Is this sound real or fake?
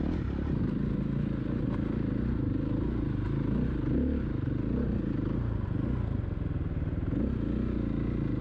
real